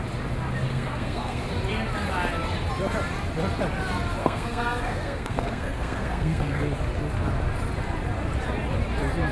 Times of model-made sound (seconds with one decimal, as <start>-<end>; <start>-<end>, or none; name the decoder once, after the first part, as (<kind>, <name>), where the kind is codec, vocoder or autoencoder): 0.7-1.5 (codec, SNAC); 4.2-6.6